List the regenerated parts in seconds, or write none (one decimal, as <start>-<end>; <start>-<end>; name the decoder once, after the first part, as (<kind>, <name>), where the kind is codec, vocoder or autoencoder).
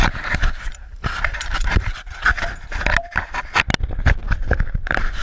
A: 0.4-2.0 (vocoder, BigVGAN v2); 4.4-5.2